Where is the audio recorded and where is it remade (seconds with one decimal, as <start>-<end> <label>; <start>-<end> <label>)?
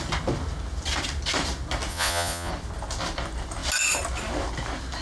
0.0-1.9 recorded; 1.9-2.5 remade; 2.5-5.0 recorded